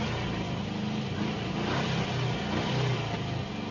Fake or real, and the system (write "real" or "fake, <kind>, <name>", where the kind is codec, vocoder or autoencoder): real